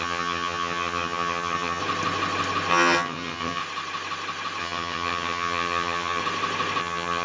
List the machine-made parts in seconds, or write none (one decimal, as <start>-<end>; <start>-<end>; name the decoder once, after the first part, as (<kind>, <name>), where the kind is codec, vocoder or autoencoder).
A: 0.0-1.8 (vocoder, HiFi-GAN); 2.7-3.6; 4.6-6.2; 6.8-7.2